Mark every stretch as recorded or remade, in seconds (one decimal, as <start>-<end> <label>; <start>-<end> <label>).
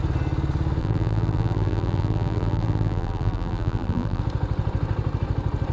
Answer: 0.0-0.8 recorded; 0.8-4.2 remade; 4.2-5.7 recorded